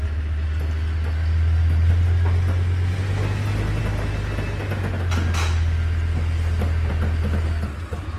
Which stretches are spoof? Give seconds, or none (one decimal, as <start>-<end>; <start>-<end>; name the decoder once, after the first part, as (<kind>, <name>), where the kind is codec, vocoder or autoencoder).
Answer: none